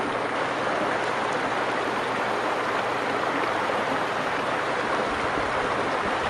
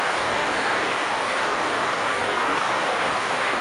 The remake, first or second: second